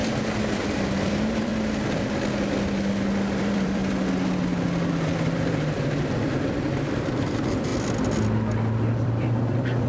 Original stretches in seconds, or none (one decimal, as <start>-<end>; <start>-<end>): 0.0-0.7; 1.5-3.4; 3.8-4.9; 7.7-8.9